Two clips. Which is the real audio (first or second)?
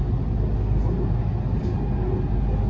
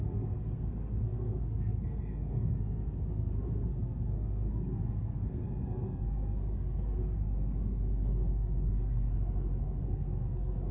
first